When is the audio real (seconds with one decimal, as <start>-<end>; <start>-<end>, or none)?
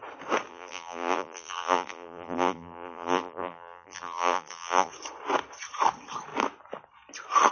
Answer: 0.0-0.5; 4.9-7.5